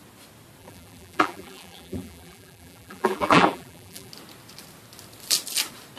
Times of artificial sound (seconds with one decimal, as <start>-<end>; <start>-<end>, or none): 0.6-4.1